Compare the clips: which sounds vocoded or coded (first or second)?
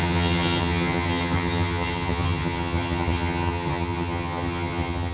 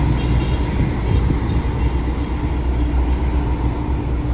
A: first